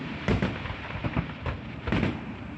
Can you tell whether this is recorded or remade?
remade